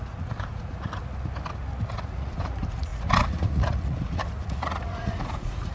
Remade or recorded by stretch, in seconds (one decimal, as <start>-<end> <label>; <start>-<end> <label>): 0.0-1.0 remade; 1.0-1.9 recorded; 1.9-5.7 remade